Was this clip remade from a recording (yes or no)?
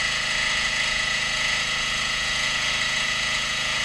yes